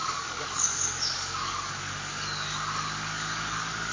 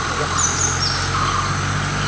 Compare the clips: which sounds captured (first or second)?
second